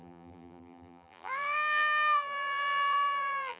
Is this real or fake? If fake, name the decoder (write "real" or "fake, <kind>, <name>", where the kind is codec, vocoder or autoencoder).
fake, vocoder, BigVGAN v2